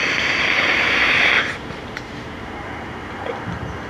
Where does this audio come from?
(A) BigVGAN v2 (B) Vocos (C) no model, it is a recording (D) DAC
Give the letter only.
A